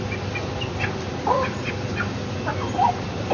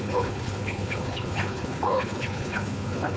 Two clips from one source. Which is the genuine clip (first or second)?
first